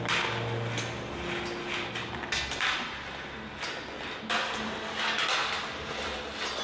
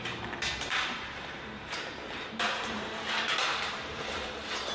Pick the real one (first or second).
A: first